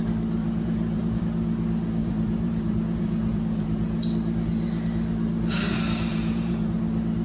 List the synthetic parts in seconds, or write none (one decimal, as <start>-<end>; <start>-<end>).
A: 0.4-1.2; 2.0-4.0; 6.1-6.8